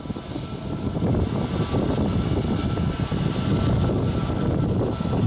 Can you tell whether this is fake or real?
real